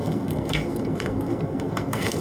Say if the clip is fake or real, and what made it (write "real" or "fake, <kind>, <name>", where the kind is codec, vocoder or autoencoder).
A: fake, codec, SNAC